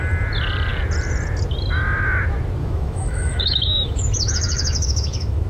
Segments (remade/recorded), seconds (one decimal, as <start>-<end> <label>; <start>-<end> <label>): 0.0-2.6 recorded; 2.6-5.5 remade